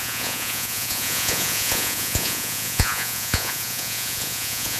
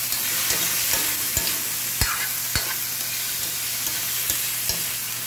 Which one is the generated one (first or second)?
first